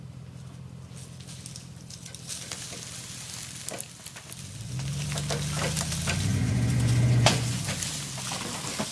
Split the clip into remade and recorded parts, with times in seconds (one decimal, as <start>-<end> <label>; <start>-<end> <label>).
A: 0.0-6.3 recorded; 6.3-7.6 remade; 7.6-8.9 recorded